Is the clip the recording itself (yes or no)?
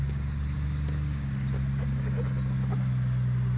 yes